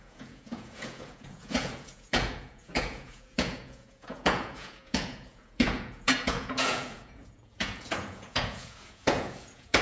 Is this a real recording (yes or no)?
no